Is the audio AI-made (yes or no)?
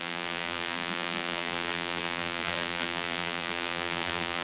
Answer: yes